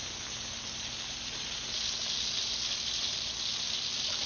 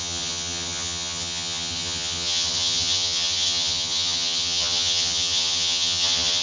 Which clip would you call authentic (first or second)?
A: first